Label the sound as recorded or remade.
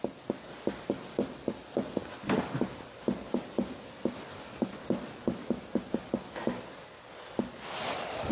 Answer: recorded